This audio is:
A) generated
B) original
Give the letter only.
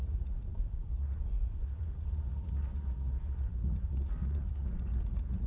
A